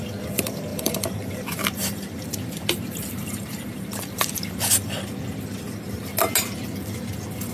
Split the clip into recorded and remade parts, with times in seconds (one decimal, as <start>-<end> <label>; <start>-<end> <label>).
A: 0.0-0.7 recorded; 0.7-4.7 remade; 4.7-7.5 recorded